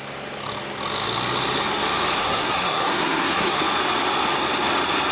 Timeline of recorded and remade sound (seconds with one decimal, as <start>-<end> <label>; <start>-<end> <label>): 0.0-2.2 recorded; 2.2-3.6 remade; 3.6-5.1 recorded